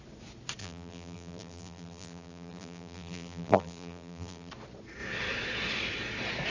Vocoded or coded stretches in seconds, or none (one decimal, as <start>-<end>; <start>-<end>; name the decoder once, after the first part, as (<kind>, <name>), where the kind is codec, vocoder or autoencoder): 0.6-4.5 (vocoder, BigVGAN v2)